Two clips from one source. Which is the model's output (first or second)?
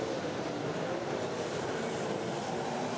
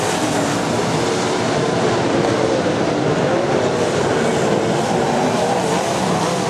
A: first